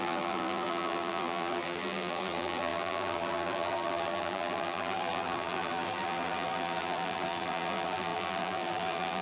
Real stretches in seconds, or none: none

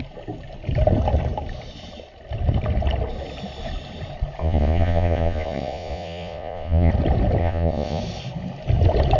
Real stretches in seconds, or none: 0.0-4.4; 6.9-7.4; 8.0-9.2

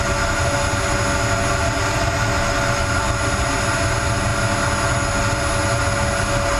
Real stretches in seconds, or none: 0.0-6.6

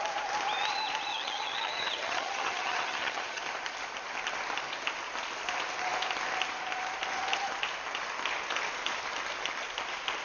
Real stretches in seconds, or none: 0.0-1.1; 3.4-10.2

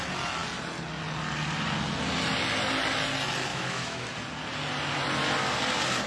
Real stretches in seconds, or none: 0.0-3.5; 4.1-6.1

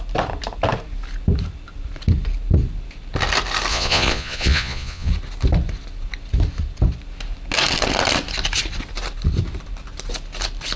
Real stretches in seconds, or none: 0.0-3.7; 5.1-10.8